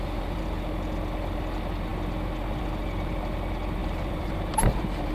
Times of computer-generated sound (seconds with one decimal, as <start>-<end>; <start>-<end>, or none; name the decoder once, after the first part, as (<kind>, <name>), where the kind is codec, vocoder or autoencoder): 3.8-5.1 (vocoder, BigVGAN v2)